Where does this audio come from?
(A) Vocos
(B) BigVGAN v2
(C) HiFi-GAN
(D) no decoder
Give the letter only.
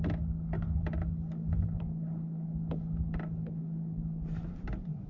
D